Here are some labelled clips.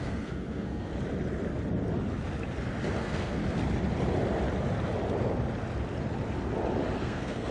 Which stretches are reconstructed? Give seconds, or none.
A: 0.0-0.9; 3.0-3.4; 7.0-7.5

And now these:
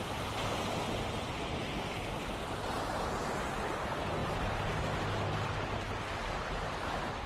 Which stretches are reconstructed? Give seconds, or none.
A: 4.2-5.1

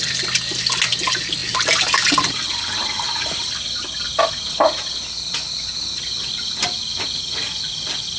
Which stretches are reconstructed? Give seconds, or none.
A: none

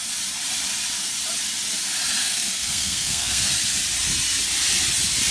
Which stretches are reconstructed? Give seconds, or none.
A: 2.2-3.5

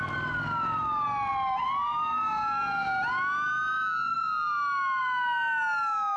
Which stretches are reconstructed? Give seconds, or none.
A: none